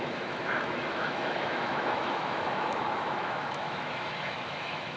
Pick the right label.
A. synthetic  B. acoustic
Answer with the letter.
A